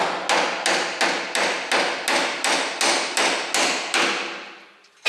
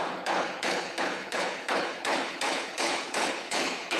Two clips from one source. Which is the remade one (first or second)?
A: second